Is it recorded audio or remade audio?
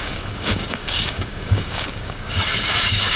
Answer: remade